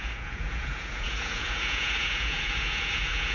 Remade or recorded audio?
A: remade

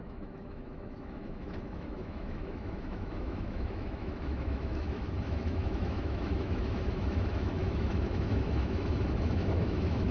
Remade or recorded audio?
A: remade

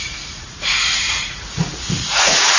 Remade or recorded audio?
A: remade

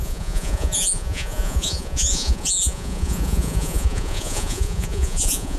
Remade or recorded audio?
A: remade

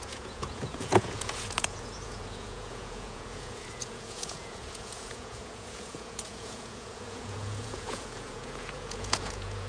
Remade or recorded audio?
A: remade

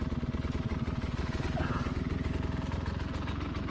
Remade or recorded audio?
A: recorded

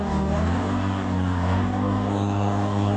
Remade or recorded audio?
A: remade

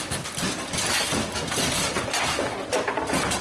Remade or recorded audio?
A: recorded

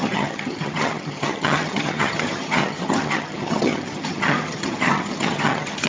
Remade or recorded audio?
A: remade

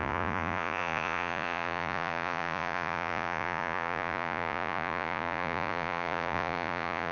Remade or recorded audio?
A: remade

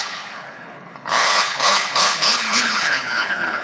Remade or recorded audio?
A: remade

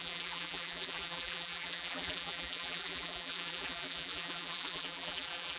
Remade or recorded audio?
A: remade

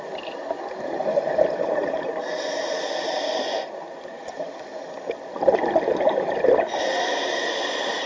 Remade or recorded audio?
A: remade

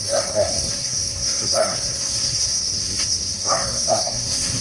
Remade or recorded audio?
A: remade